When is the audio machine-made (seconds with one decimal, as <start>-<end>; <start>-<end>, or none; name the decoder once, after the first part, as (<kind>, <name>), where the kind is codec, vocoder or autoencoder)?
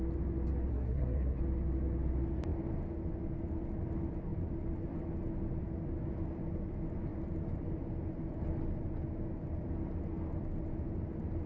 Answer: 0.7-1.4 (codec, SNAC)